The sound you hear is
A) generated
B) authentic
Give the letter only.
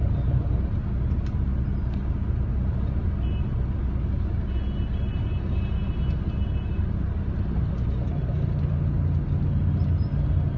B